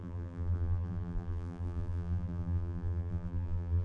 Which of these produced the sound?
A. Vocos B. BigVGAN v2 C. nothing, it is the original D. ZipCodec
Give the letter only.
B